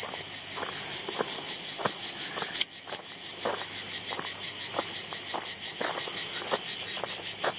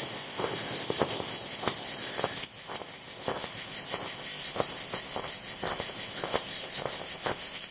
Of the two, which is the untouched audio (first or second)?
first